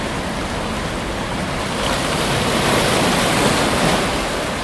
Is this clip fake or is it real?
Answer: real